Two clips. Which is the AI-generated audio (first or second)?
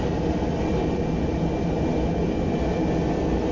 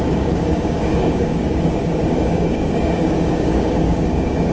second